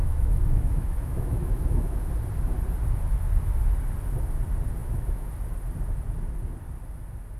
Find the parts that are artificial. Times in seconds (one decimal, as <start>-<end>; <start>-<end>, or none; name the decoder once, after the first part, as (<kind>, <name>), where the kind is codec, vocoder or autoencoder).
0.0-2.1 (autoencoder, DAC-VAE); 4.8-5.3